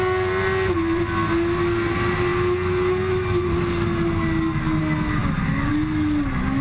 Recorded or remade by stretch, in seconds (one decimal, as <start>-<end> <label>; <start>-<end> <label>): 0.0-6.6 recorded